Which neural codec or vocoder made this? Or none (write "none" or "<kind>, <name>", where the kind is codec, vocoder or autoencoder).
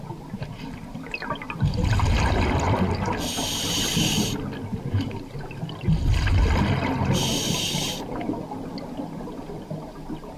none